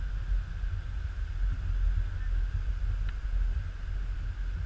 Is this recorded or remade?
recorded